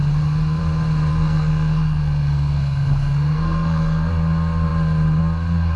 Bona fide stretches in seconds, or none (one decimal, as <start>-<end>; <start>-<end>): 0.0-1.1; 4.1-5.8